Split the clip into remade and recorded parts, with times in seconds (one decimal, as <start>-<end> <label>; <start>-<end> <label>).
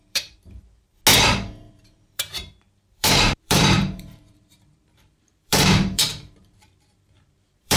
0.0-1.0 remade; 1.0-1.7 recorded; 1.7-7.8 remade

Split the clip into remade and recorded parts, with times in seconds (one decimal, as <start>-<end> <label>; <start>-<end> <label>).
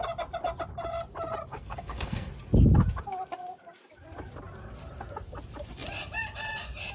0.0-1.5 recorded; 1.5-2.3 remade; 2.3-6.9 recorded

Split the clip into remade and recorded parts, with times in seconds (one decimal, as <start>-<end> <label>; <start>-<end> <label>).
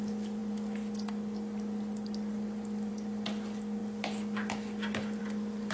0.0-5.7 recorded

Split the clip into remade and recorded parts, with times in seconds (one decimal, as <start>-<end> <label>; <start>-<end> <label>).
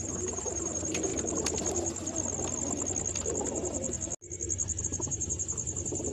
0.0-1.1 remade; 1.1-4.8 recorded; 4.8-6.1 remade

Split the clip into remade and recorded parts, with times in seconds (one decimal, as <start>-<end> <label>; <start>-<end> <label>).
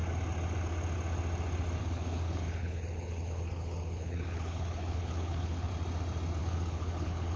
0.0-1.8 recorded; 1.8-5.7 remade; 5.7-6.4 recorded; 6.4-7.4 remade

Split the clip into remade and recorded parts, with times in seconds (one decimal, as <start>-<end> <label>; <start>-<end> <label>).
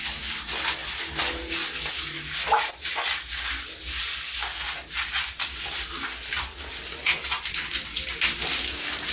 0.0-9.1 recorded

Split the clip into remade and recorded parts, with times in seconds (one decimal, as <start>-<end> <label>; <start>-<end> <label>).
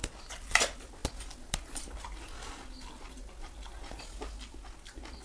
0.0-0.6 remade; 0.6-5.2 recorded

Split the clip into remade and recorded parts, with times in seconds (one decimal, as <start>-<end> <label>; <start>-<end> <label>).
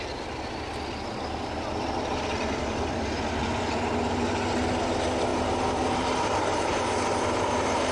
0.0-5.3 recorded; 5.3-7.9 remade